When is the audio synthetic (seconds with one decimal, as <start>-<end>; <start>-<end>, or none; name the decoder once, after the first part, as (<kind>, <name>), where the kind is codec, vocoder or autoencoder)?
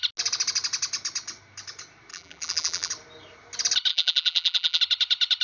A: 2.1-2.9 (vocoder, BigVGAN v2); 3.9-4.8